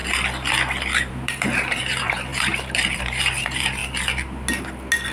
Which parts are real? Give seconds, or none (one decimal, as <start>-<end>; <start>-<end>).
0.0-1.1; 3.8-5.1